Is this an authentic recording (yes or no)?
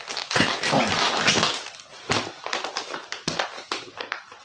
yes